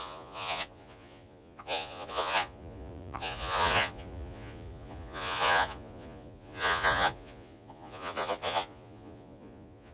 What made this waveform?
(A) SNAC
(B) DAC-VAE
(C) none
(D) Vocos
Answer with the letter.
D